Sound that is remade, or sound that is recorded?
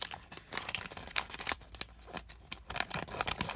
recorded